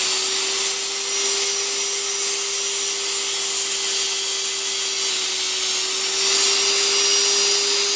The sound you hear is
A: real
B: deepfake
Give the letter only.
A